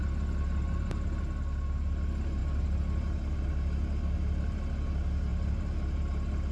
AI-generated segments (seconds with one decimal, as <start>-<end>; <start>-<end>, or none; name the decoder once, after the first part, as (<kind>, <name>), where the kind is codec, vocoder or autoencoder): none